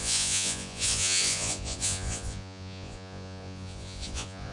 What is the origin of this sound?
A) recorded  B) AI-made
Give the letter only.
B